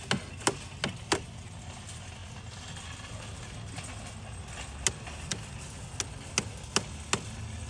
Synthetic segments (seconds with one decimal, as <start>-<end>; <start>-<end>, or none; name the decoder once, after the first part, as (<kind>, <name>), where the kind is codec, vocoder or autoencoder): none